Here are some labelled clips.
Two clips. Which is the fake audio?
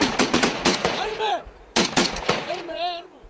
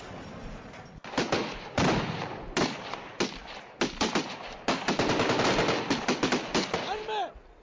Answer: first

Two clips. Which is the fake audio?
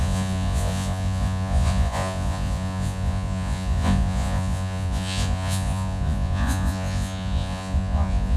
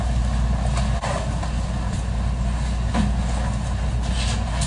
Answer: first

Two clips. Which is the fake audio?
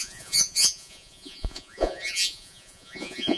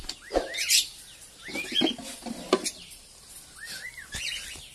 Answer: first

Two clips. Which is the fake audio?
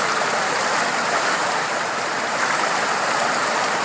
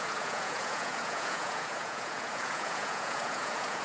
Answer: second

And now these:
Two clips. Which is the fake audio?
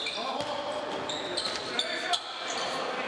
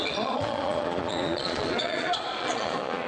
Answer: second